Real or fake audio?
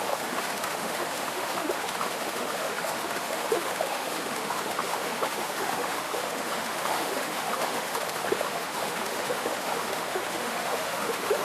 fake